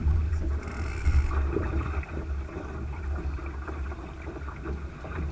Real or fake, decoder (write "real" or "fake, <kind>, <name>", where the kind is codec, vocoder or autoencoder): real